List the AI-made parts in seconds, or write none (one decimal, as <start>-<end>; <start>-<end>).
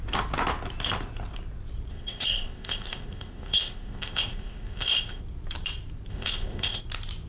1.9-5.2; 6.1-6.8